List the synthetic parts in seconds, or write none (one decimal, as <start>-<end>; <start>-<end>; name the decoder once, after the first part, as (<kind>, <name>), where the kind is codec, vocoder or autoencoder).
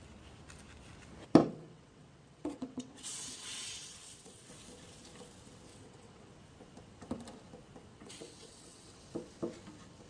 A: 1.4-4.5 (vocoder, WaveNeXt); 5.7-6.3; 7.9-9.0